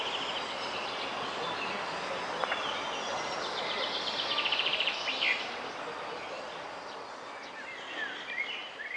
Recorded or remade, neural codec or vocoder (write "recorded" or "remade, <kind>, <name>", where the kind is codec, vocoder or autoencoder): recorded